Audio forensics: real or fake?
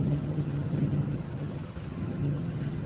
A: fake